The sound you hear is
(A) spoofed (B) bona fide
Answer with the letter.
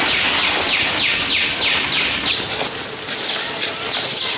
B